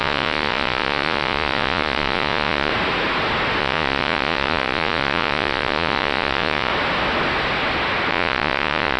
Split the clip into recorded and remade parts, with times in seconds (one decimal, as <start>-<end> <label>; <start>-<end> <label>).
0.0-2.7 remade; 2.7-3.6 recorded; 3.6-6.7 remade; 6.7-8.1 recorded; 8.1-9.0 remade